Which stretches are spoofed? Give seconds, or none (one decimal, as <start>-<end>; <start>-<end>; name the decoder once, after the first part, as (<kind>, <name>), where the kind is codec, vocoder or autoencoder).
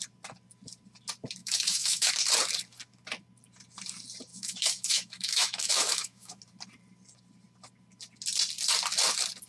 1.4-2.1 (autoencoder, DAC-VAE); 4.3-6.4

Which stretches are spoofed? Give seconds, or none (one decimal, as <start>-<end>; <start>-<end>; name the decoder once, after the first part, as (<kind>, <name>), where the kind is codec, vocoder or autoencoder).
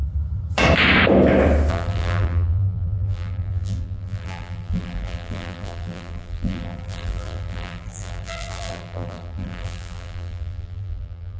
1.7-11.4 (vocoder, BigVGAN v2)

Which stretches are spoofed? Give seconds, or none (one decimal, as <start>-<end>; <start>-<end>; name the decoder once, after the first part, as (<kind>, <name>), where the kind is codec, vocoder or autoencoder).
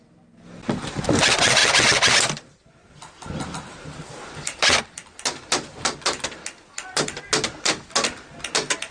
none